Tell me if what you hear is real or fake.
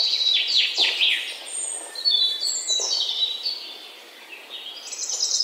real